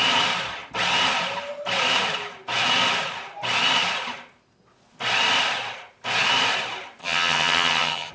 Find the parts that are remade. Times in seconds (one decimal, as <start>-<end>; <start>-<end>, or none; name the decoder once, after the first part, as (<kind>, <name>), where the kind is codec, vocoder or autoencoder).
7.0-8.1 (vocoder, HiFi-GAN)